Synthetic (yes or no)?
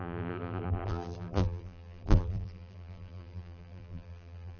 yes